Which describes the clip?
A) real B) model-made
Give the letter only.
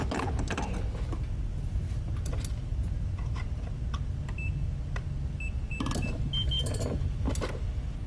A